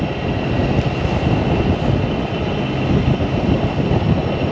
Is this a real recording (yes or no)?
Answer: yes